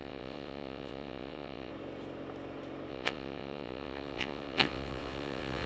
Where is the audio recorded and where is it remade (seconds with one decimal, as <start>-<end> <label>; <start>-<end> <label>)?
0.0-1.7 remade; 1.7-2.9 recorded; 2.9-5.7 remade